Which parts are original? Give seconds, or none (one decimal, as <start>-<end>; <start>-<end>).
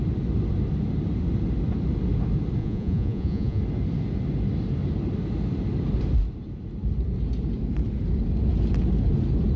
0.0-2.6; 3.6-9.6